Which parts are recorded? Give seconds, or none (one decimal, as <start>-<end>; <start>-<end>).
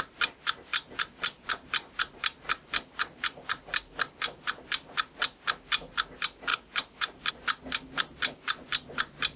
0.0-0.7; 4.2-6.5; 7.3-9.4